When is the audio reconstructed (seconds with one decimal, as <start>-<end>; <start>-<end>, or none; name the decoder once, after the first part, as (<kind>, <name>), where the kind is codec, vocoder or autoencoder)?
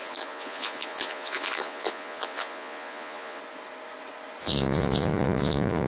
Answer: 0.0-3.4 (vocoder, Vocos); 4.4-5.9